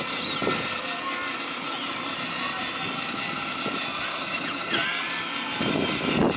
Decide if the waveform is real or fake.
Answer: real